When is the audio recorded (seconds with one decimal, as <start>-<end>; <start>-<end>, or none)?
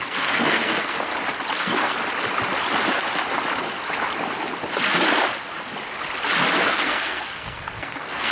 1.1-1.6; 2.0-6.6